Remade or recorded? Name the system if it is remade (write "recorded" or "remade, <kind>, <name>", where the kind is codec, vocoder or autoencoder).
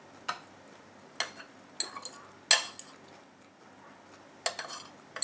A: recorded